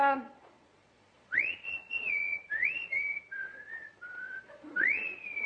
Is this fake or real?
fake